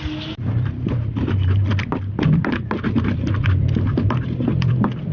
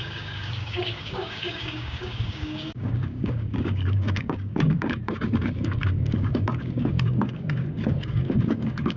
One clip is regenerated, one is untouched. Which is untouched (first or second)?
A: first